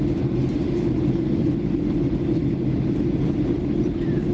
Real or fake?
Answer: real